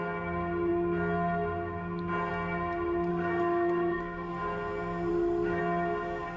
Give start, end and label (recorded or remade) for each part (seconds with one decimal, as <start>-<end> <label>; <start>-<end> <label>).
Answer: 0.0-3.1 recorded; 3.1-4.3 remade; 4.3-5.1 recorded; 5.1-5.6 remade; 5.6-6.4 recorded